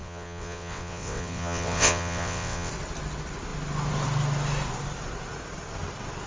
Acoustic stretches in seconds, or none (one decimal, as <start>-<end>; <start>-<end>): 2.7-6.3